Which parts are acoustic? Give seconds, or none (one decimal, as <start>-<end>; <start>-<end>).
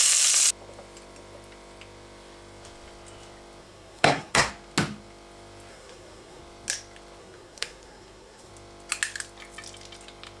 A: 0.0-3.6; 4.5-5.7; 6.4-7.2; 8.5-10.4